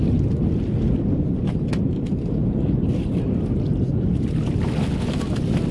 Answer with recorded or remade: recorded